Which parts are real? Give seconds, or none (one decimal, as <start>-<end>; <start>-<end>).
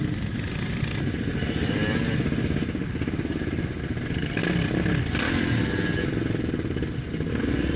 0.0-7.8